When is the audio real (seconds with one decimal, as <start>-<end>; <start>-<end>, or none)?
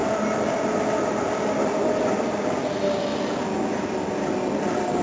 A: 0.0-5.0